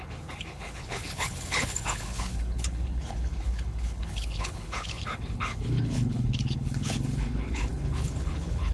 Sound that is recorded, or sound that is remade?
remade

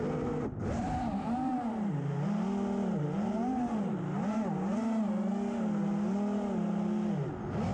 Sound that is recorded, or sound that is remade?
recorded